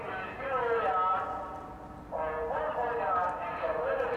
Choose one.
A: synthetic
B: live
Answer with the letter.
B